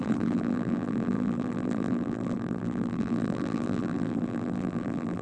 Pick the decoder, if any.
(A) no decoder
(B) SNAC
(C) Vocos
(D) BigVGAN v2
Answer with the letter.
D